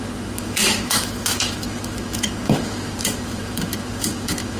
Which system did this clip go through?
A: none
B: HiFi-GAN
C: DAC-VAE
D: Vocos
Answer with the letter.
C